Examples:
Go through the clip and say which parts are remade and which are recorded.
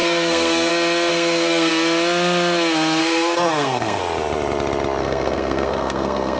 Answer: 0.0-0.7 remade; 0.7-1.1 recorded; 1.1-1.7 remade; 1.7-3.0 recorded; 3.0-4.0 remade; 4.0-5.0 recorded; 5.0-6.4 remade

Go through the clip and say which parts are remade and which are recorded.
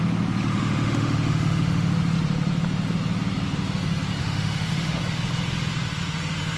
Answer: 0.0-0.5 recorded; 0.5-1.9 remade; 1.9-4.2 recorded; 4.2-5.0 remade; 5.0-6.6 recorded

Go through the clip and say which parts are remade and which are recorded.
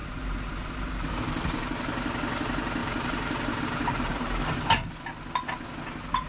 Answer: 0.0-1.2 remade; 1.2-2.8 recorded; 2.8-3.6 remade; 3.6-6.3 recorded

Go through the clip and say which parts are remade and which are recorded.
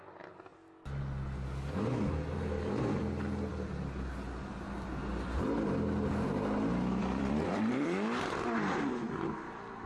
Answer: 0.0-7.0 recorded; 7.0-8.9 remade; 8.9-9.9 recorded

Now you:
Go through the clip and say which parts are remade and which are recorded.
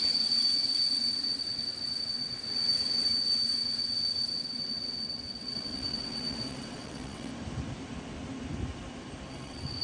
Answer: 0.0-7.3 remade; 7.3-9.3 recorded; 9.3-9.8 remade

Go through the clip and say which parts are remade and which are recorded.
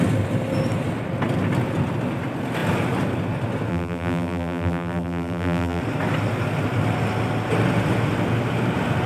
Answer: 0.0-3.7 recorded; 3.7-5.8 remade; 5.8-9.1 recorded